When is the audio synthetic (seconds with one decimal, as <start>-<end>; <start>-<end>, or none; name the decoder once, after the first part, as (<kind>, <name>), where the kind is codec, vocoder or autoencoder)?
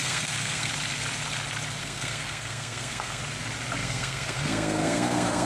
0.0-0.7 (codec, SNAC); 1.8-3.2; 3.8-5.5